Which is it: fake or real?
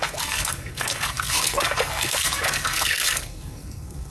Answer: fake